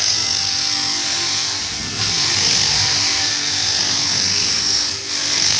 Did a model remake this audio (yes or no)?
yes